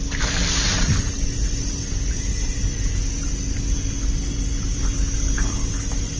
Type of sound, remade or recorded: recorded